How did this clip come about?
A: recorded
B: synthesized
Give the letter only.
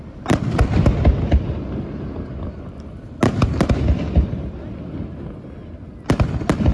A